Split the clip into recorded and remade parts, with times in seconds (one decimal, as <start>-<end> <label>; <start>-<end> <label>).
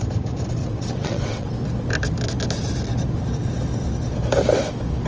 0.0-0.6 recorded; 0.6-1.5 remade; 1.5-5.1 recorded